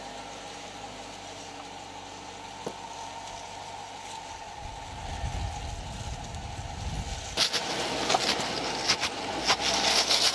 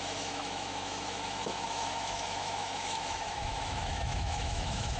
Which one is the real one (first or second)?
first